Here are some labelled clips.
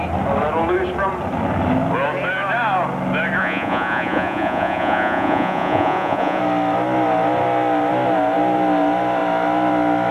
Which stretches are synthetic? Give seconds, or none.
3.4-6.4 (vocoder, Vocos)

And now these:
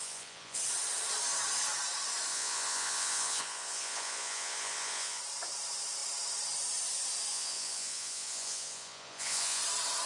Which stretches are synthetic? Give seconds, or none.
0.0-0.6 (vocoder, Vocos); 2.3-5.2; 7.3-9.6

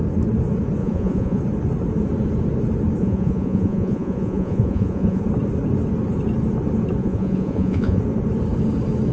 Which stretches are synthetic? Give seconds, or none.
0.8-1.4 (vocoder, Vocos); 3.0-5.2; 7.0-8.0

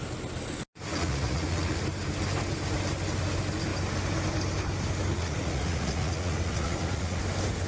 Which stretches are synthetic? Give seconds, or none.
0.9-1.8 (vocoder, Vocos); 5.1-7.2

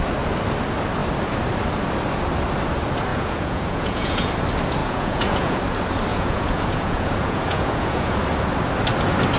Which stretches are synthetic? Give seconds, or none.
3.1-4.3 (vocoder, Vocos); 4.8-5.6; 6.1-8.2

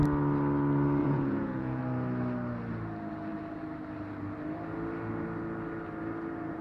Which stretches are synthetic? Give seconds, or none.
1.0-1.8 (vocoder, Vocos)